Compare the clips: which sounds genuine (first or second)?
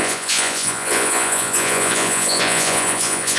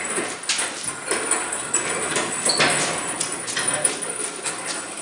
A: second